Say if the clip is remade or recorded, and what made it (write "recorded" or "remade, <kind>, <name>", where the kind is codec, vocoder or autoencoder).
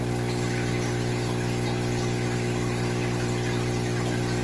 recorded